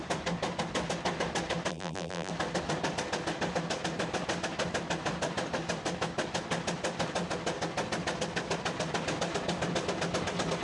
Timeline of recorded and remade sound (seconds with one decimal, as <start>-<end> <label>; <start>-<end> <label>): 0.0-1.7 recorded; 1.7-2.3 remade; 2.3-10.6 recorded